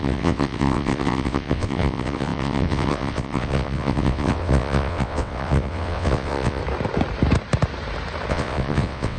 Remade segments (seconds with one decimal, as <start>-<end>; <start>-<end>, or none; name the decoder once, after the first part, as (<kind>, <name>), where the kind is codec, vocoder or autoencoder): 0.0-6.6 (vocoder, WaveNeXt); 8.3-9.2